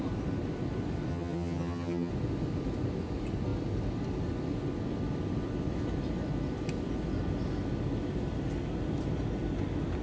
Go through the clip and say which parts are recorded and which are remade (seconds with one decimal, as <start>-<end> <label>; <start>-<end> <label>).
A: 0.0-1.1 recorded; 1.1-2.1 remade; 2.1-10.0 recorded